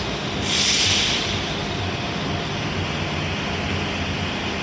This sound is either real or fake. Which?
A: real